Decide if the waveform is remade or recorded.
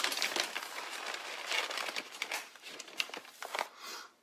recorded